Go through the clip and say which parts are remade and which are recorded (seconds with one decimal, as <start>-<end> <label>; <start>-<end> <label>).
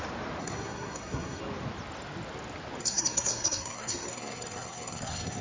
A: 0.0-0.4 recorded; 0.4-1.4 remade; 1.4-2.8 recorded; 2.8-5.4 remade